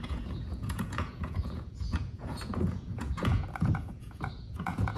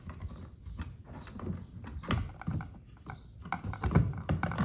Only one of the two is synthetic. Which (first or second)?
first